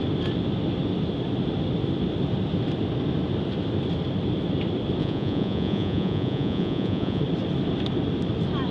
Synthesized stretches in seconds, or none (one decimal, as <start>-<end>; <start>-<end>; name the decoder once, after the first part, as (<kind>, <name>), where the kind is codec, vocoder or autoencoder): 5.0-7.2 (vocoder, Vocos)